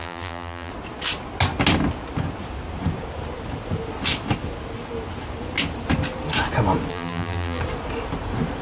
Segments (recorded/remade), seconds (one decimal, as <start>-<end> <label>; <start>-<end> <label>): 0.0-0.7 remade; 0.7-6.9 recorded; 6.9-7.6 remade; 7.6-8.6 recorded